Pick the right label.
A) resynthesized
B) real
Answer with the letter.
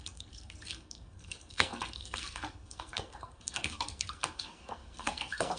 A